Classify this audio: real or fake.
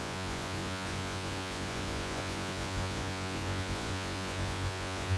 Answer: fake